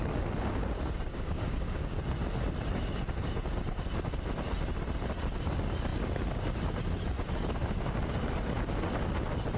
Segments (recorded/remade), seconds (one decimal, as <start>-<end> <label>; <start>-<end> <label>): 0.0-1.1 recorded; 1.1-2.0 remade; 2.0-9.6 recorded